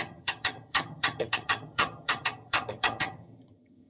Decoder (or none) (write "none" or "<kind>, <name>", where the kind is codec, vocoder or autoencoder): vocoder, HiFi-GAN